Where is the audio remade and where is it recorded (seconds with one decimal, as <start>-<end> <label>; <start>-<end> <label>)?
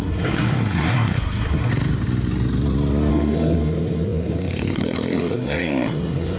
0.0-1.7 remade; 1.7-3.1 recorded; 3.1-6.4 remade